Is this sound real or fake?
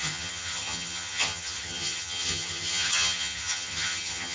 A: fake